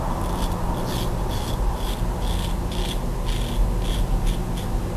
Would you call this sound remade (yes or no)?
no